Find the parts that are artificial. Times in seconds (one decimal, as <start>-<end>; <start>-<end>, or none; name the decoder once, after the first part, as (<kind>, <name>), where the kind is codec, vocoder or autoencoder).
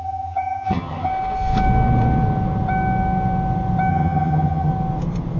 0.0-1.1 (vocoder, HiFi-GAN); 3.9-4.7